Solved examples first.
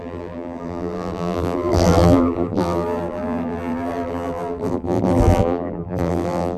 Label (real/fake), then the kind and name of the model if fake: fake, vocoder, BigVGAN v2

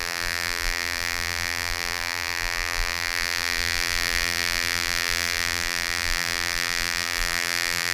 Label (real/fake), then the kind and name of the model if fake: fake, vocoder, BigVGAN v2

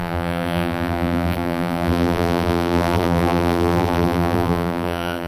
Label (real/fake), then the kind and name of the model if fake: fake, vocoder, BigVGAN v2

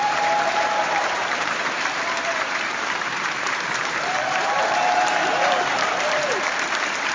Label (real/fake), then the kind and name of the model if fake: fake, vocoder, BigVGAN v2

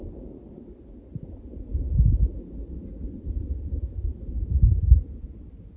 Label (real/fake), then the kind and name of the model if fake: real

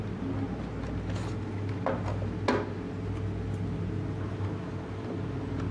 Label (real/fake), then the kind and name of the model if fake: real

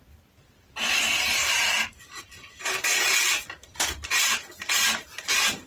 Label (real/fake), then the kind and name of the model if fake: fake, vocoder, BigVGAN v2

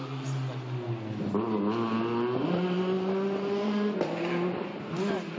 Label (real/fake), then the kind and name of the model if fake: real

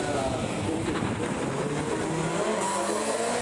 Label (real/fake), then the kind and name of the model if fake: real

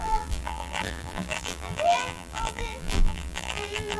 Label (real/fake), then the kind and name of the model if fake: fake, vocoder, BigVGAN v2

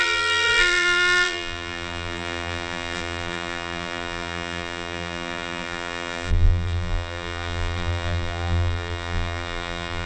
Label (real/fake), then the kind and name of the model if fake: fake, vocoder, BigVGAN v2